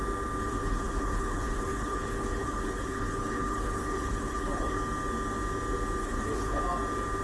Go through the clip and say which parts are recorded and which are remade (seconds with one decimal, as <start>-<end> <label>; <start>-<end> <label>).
0.0-0.5 recorded; 0.5-4.8 remade; 4.8-6.0 recorded; 6.0-6.6 remade; 6.6-7.2 recorded